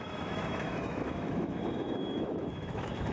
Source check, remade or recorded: remade